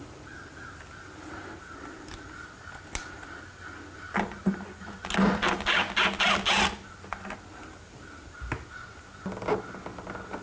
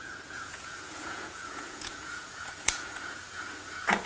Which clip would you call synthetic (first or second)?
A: second